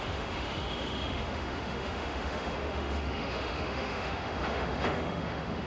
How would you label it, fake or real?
fake